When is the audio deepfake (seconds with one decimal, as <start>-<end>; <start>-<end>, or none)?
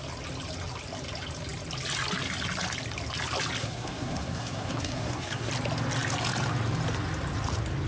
3.6-5.5